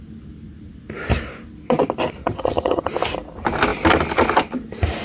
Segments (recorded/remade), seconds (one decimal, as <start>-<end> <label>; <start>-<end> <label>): 0.0-2.2 recorded; 2.2-2.9 remade; 2.9-5.0 recorded